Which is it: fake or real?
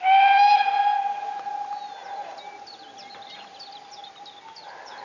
real